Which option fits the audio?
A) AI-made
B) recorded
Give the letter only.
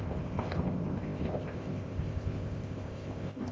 A